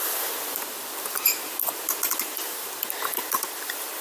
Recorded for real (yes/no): yes